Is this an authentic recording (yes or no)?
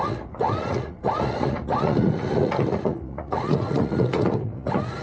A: no